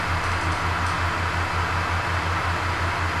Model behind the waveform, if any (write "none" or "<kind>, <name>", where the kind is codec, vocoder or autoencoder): none